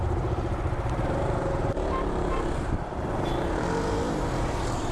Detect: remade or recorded remade